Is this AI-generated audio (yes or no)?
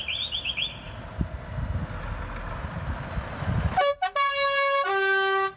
no